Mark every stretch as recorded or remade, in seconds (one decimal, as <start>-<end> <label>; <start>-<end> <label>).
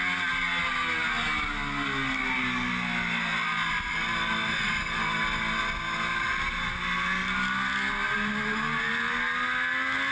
0.0-10.1 recorded